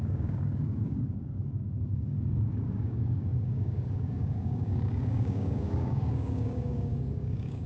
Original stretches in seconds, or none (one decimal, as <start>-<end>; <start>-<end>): none